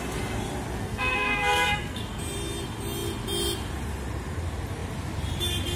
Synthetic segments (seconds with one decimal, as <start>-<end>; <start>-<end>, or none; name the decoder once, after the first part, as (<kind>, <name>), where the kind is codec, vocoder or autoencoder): 0.8-2.2 (codec, SNAC)